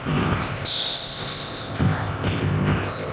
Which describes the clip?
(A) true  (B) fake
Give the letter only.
B